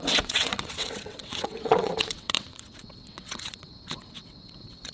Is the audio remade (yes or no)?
yes